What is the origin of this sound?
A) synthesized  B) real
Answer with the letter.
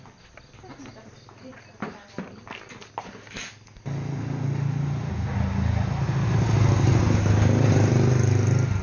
B